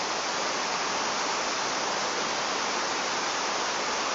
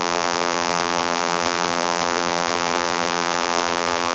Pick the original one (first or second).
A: first